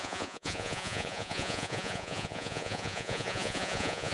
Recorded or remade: remade